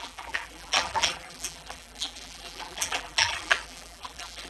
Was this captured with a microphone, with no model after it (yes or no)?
no